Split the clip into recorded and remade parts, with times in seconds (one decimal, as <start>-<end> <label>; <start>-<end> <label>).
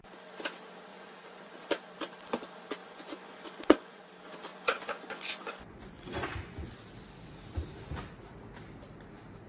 0.0-0.9 recorded; 0.9-1.6 remade; 1.6-2.8 recorded; 2.8-4.0 remade; 4.0-4.5 recorded; 4.5-6.7 remade; 6.7-9.5 recorded